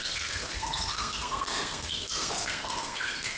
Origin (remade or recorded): remade